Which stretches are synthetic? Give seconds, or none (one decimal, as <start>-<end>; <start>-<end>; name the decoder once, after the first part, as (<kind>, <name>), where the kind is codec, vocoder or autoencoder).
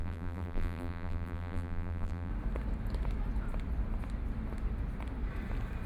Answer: 0.0-2.3 (vocoder, BigVGAN v2)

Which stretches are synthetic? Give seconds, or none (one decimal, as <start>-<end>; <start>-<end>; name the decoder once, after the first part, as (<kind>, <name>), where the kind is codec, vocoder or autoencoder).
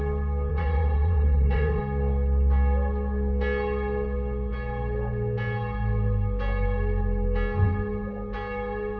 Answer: 0.5-1.8 (vocoder, WaveNeXt)